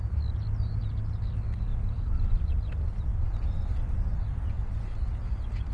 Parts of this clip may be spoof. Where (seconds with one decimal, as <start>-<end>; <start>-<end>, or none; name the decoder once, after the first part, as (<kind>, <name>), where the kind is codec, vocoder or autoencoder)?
none